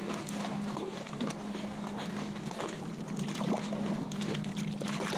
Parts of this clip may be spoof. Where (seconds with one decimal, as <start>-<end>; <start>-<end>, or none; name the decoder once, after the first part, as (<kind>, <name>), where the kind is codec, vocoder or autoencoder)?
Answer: 0.0-2.8 (codec, DAC); 3.6-4.5